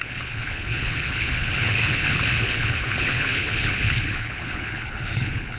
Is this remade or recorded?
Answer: remade